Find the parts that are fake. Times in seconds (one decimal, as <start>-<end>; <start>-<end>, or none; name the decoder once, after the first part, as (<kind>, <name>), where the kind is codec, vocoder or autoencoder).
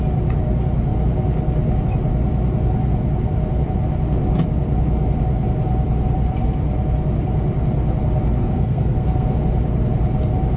8.4-9.4 (codec, SNAC)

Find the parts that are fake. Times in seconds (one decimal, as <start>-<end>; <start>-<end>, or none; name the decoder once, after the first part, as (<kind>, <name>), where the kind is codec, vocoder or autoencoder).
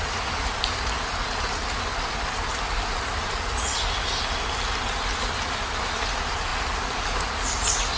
none